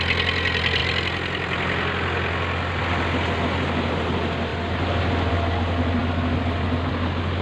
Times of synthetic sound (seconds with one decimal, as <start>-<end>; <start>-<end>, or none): none